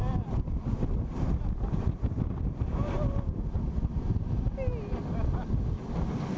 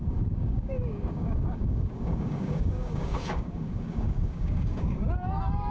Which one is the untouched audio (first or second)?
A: first